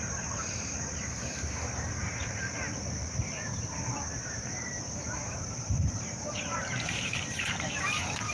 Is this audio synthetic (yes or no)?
yes